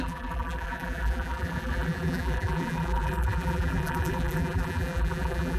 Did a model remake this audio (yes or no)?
yes